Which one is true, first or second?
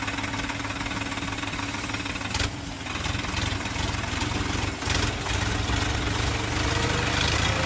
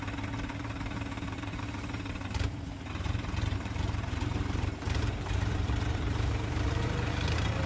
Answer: first